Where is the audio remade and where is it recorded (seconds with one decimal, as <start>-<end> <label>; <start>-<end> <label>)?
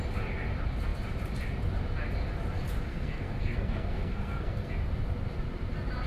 0.0-2.9 recorded; 2.9-4.7 remade; 4.7-6.1 recorded